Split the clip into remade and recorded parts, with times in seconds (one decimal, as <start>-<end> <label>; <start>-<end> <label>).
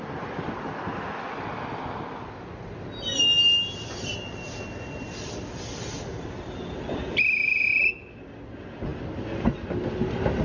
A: 0.0-10.4 recorded